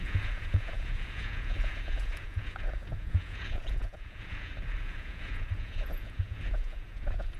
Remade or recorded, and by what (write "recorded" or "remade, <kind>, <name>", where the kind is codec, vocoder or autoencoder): remade, vocoder, Vocos